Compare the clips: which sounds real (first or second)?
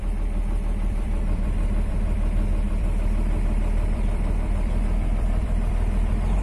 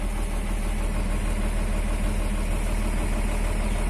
second